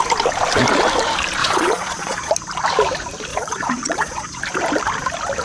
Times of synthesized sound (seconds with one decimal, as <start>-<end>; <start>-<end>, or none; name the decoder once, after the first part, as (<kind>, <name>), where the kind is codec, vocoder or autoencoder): 1.4-2.3 (vocoder, Vocos); 3.3-4.4